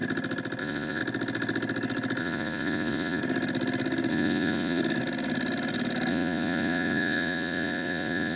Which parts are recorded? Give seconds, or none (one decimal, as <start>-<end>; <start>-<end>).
0.0-0.6; 1.0-2.2; 3.2-4.1; 4.8-6.1